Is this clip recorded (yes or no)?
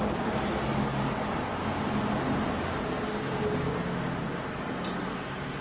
yes